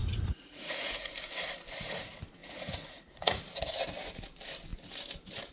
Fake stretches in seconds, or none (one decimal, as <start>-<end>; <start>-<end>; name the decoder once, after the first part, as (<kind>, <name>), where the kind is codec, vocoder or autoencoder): 0.0-1.1 (vocoder, Vocos); 2.4-3.4